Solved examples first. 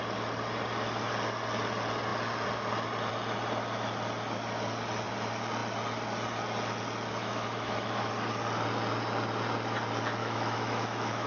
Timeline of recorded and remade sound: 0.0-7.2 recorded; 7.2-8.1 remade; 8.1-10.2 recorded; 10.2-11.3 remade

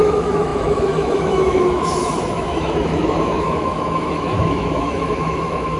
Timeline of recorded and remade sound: 0.0-5.8 remade

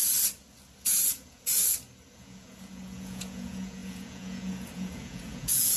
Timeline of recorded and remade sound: 0.0-0.8 recorded; 0.8-1.5 remade; 1.5-2.1 recorded; 2.1-5.8 remade

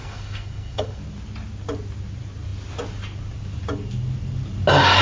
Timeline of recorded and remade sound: 0.0-1.0 remade; 1.0-5.0 recorded

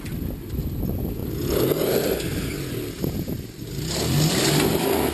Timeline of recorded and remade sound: 0.0-5.1 recorded